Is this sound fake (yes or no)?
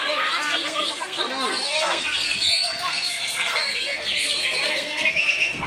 yes